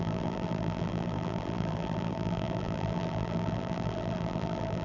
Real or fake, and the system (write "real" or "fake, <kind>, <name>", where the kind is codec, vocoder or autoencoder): fake, vocoder, BigVGAN v2